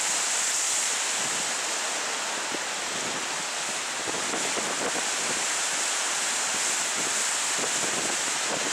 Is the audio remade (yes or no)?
no